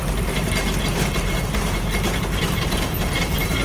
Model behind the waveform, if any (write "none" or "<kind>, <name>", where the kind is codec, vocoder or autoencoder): vocoder, BigVGAN v2